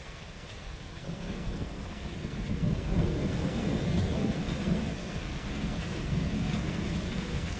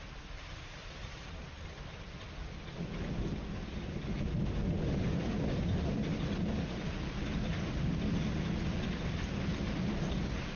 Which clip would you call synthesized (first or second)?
first